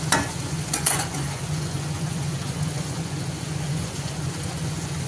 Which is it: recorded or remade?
remade